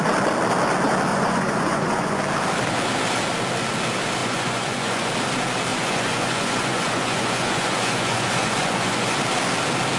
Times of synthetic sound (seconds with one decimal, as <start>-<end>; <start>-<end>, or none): 1.1-2.2; 4.2-5.1; 5.7-9.2